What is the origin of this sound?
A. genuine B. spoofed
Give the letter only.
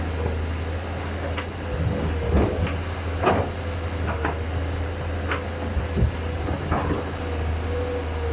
A